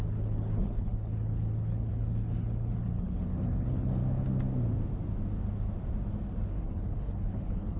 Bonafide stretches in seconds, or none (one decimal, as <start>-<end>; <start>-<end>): 4.0-6.4